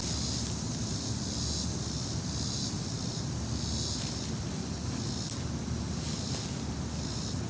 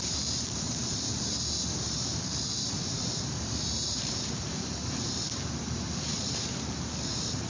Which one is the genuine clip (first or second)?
first